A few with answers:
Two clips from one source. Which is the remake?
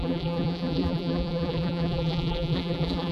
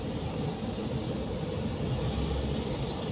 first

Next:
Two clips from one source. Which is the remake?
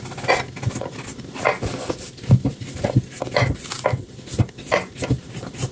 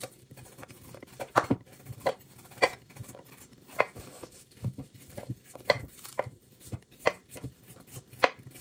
second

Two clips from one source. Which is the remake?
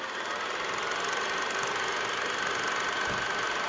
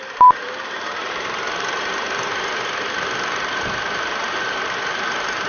second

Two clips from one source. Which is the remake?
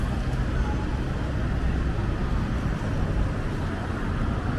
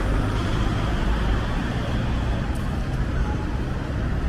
second